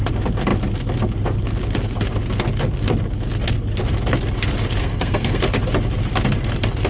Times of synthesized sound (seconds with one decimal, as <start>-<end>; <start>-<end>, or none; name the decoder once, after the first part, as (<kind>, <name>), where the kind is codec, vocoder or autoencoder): 4.8-5.4 (codec, SNAC)